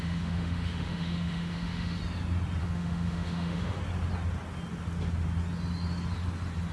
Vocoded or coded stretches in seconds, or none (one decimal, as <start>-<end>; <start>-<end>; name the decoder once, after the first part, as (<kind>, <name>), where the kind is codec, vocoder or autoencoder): 0.0-2.0 (autoencoder, DAC-VAE); 2.6-3.8